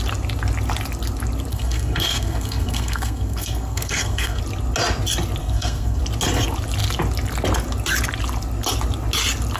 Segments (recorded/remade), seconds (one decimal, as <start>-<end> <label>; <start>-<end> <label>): 0.0-1.5 recorded; 1.5-4.4 remade; 4.4-5.4 recorded; 5.4-6.0 remade; 6.0-9.6 recorded